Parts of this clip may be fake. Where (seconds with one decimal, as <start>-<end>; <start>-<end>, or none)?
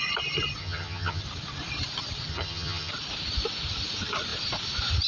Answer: 0.6-1.2; 2.3-2.9